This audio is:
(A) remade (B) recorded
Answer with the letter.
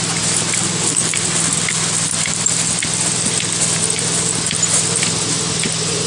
B